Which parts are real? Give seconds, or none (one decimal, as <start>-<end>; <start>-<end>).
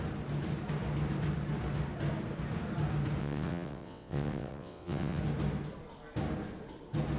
0.0-3.2; 5.2-7.2